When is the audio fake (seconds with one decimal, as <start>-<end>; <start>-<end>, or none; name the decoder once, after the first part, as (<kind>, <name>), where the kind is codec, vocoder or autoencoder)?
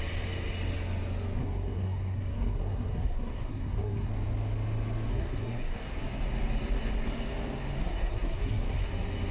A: 1.4-4.1 (codec, SNAC); 5.1-6.0; 7.8-8.9